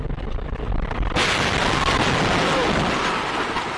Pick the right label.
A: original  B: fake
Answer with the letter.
A